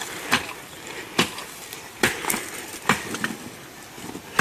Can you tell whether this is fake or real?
real